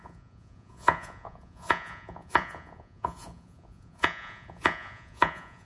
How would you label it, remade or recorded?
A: remade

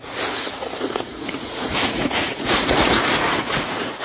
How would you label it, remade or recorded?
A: remade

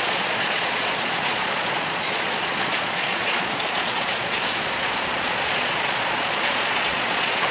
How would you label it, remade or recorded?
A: remade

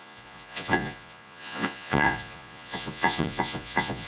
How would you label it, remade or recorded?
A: remade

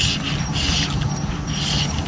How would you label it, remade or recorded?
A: recorded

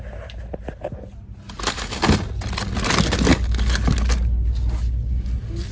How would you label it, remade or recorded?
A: recorded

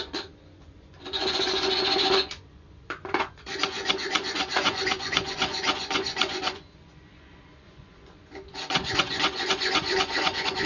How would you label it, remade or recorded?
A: remade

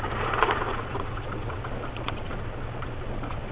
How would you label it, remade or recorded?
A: remade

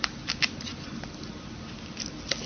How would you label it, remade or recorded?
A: recorded